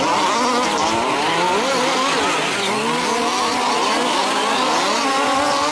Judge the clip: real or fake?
real